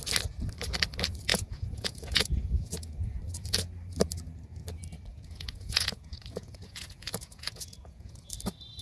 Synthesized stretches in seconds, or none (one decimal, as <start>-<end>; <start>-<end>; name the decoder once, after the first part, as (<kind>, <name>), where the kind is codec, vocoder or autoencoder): 1.3-3.2 (vocoder, Vocos); 5.1-8.3